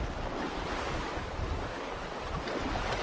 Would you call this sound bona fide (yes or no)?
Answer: yes